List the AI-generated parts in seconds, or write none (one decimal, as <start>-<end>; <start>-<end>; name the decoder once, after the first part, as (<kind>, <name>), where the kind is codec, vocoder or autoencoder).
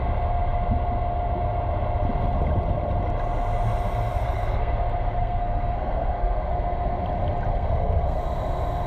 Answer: 4.1-4.7 (codec, SNAC); 5.2-6.5; 7.5-8.2